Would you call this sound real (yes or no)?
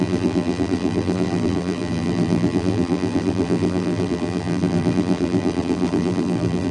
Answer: no